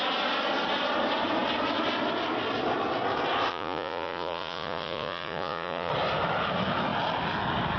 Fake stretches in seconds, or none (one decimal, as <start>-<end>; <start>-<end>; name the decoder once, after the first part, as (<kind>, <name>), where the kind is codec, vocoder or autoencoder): 3.5-5.9 (vocoder, Vocos)